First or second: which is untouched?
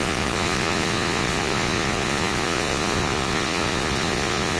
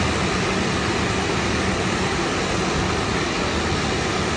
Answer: second